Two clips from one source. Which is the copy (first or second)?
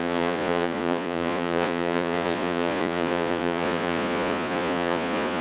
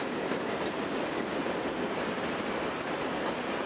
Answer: first